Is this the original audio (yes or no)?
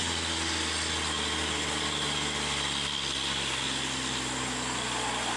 yes